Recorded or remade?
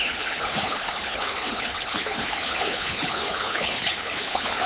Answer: remade